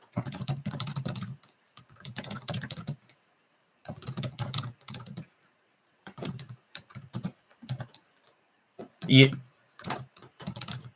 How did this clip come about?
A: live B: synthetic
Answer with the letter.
B